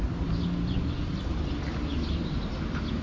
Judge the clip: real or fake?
real